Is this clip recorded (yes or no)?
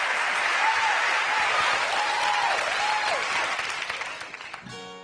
yes